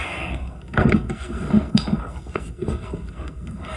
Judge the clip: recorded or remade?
remade